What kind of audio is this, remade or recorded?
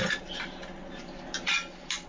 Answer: recorded